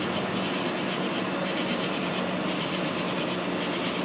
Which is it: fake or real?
real